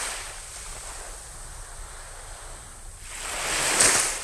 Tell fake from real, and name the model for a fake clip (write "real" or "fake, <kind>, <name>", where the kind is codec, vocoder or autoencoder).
real